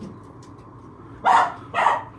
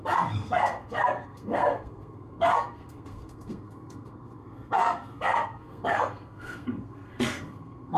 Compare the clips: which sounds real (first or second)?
first